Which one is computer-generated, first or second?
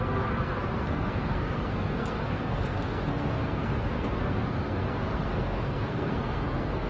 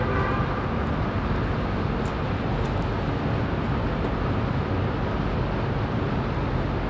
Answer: first